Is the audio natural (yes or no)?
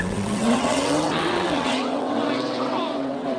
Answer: no